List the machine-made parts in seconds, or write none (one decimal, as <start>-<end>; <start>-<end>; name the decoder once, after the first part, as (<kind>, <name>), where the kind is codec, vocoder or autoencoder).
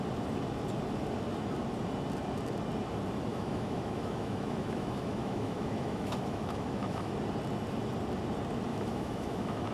3.3-7.1 (autoencoder, DAC-VAE); 8.7-9.7